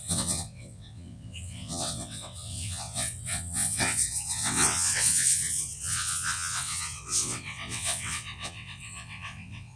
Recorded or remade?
remade